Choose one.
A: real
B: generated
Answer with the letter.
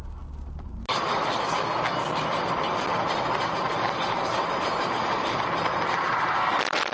A